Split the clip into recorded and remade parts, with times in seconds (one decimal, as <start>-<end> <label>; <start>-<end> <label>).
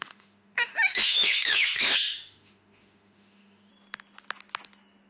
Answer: 0.0-3.7 remade; 3.7-5.1 recorded